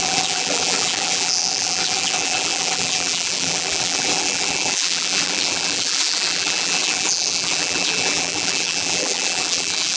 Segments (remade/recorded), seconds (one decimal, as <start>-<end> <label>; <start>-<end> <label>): 0.0-10.0 remade

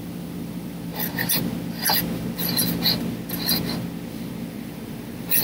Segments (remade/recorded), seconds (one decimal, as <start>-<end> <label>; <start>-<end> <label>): 0.0-0.9 remade; 0.9-4.1 recorded; 4.1-5.4 remade

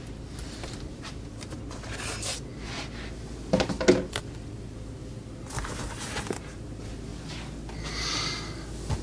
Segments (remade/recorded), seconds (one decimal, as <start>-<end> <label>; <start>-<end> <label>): 0.0-0.4 recorded; 0.4-1.1 remade; 1.1-9.0 recorded

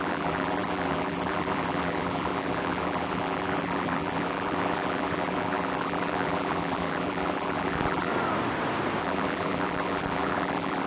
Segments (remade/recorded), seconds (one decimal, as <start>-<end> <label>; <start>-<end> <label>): 0.0-8.1 remade; 8.1-9.0 recorded; 9.0-10.9 remade